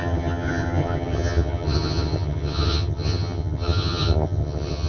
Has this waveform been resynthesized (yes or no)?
yes